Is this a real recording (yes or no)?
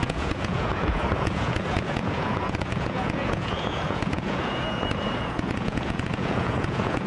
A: no